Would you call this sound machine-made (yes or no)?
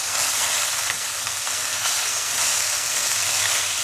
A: yes